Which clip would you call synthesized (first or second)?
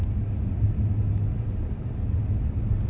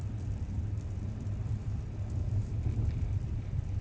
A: second